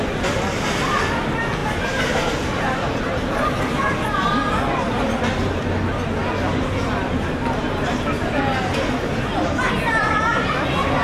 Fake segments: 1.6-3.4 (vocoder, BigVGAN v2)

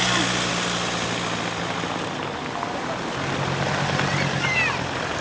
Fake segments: none

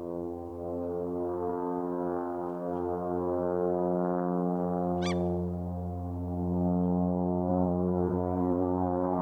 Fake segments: 7.5-9.2 (vocoder, BigVGAN v2)

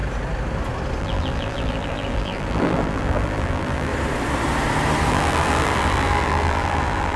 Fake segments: 1.0-3.9 (vocoder, BigVGAN v2); 5.1-7.2

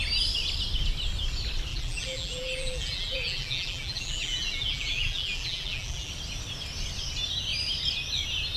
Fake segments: 1.7-6.1 (vocoder, BigVGAN v2)

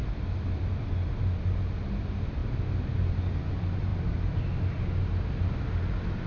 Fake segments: none

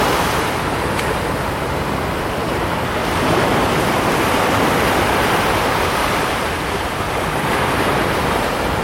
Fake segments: 0.0-3.0 (vocoder, BigVGAN v2); 3.5-8.8